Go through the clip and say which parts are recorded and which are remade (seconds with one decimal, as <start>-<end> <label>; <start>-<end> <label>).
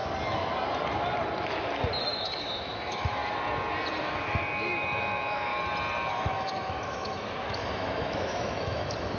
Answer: 0.0-2.0 recorded; 2.0-3.2 remade; 3.2-4.1 recorded; 4.1-5.5 remade; 5.5-6.1 recorded; 6.1-9.2 remade